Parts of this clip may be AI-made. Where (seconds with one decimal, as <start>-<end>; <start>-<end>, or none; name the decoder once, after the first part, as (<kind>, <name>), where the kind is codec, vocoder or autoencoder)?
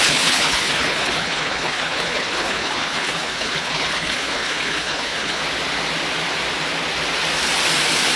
0.0-5.4 (codec, HILCodec)